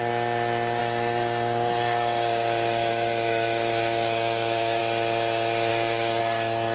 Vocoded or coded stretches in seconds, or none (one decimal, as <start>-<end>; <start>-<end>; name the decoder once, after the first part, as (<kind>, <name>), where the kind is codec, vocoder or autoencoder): 0.8-4.8 (codec, DAC); 5.7-6.2